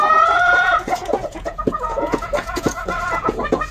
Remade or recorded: remade